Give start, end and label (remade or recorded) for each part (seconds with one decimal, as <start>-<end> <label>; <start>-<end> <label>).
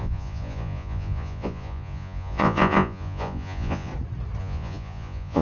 0.0-3.9 remade; 3.9-4.4 recorded; 4.4-5.4 remade